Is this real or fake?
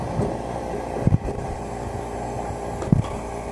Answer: real